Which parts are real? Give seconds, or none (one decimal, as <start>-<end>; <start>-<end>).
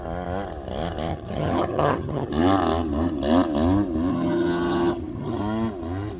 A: 0.0-1.1; 2.3-4.1; 5.4-6.2